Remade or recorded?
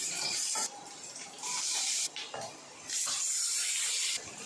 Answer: remade